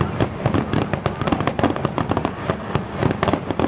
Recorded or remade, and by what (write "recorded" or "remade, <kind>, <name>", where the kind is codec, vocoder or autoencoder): recorded